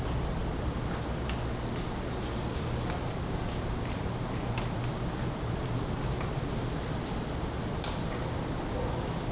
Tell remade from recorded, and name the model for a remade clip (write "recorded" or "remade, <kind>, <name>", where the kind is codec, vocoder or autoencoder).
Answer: recorded